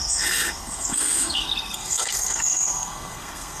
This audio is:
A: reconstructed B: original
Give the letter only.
A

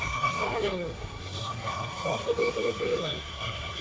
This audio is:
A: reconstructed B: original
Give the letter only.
A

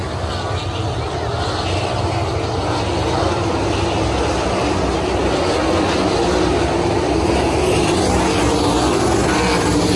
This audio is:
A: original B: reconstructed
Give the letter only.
A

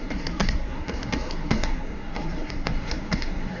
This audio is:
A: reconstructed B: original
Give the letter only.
A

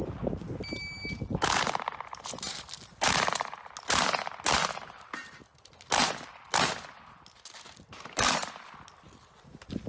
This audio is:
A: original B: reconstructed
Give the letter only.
A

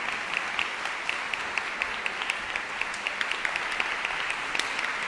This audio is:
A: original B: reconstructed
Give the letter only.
A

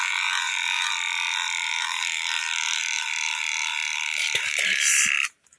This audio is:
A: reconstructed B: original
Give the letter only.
A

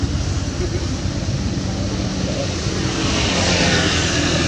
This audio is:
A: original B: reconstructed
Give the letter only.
A